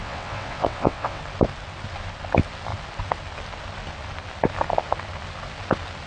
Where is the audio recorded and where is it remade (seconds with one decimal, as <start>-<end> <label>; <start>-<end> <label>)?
0.0-1.2 remade; 1.2-6.1 recorded